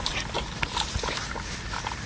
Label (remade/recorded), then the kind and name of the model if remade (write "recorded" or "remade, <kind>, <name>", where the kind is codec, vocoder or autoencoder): recorded